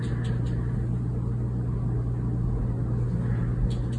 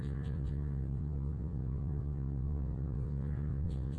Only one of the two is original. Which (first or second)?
first